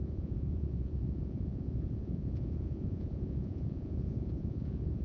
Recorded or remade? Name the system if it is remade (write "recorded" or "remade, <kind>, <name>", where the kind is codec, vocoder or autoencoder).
remade, vocoder, Vocos